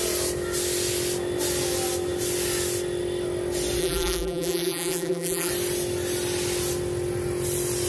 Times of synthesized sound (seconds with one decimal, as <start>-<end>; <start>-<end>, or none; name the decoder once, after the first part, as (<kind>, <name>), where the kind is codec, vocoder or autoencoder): 3.8-5.5 (vocoder, BigVGAN v2)